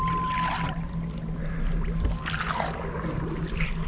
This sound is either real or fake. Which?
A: real